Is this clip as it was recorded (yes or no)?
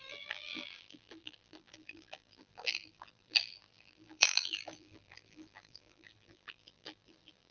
no